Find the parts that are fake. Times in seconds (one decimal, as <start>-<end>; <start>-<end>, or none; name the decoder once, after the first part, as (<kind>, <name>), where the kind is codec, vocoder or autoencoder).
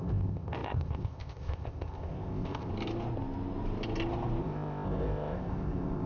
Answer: 0.0-2.7 (codec, ZipCodec); 4.4-6.1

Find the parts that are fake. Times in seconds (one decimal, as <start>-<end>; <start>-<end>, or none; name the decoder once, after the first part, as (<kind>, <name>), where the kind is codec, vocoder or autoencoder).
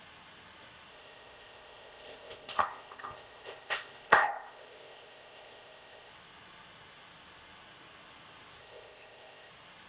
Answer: 0.9-6.1 (codec, ZipCodec); 8.6-9.5